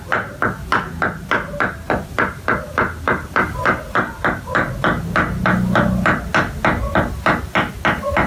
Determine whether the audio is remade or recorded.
recorded